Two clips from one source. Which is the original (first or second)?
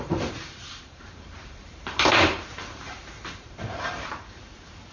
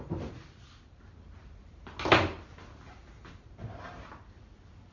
second